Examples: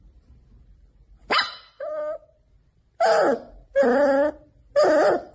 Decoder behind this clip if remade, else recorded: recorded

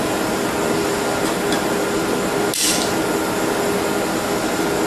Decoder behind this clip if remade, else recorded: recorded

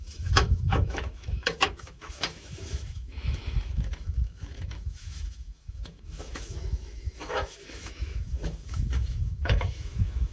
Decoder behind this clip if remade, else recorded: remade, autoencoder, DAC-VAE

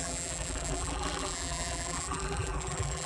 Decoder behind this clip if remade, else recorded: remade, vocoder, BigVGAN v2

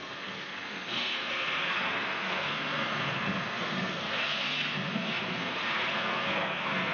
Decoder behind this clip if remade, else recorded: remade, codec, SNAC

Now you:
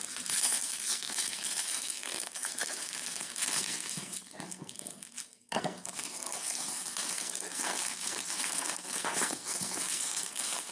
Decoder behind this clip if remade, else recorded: remade, codec, SNAC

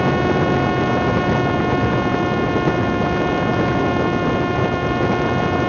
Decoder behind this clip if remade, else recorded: recorded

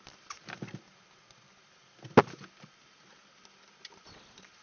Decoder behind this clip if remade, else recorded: recorded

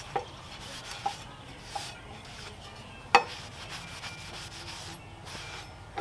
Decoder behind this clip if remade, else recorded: recorded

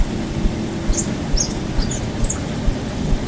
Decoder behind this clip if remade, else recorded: recorded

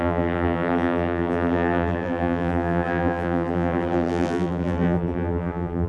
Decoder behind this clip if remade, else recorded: remade, vocoder, BigVGAN v2